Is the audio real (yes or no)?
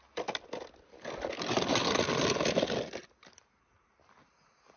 yes